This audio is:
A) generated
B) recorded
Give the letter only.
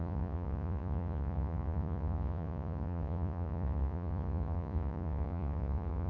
A